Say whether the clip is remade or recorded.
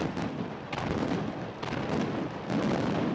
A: recorded